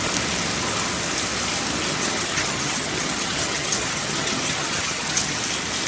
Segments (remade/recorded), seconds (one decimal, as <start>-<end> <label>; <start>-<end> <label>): 0.0-1.9 recorded; 1.9-5.4 remade; 5.4-5.9 recorded